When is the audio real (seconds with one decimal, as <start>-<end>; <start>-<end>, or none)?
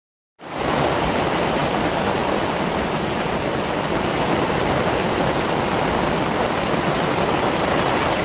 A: 0.0-8.2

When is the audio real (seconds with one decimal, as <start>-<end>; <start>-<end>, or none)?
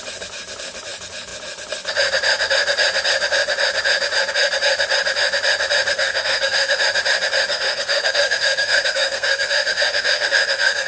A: 0.0-5.9; 6.8-7.5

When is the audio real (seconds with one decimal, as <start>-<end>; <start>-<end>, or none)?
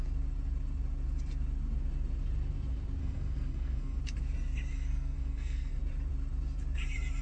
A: 0.0-3.0; 4.0-4.7; 5.8-7.2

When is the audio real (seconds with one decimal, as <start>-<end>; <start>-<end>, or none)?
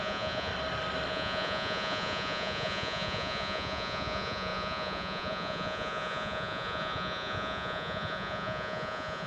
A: 0.5-1.1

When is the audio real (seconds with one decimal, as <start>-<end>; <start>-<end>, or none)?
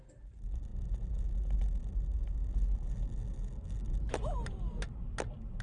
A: 0.0-5.6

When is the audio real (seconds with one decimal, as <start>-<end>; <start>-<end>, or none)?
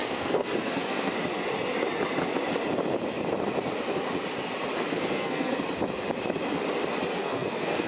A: 1.1-4.9; 5.7-7.2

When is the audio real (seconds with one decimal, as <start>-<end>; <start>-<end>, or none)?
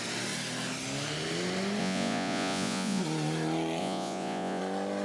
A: 0.0-1.8; 3.0-3.8; 4.6-5.0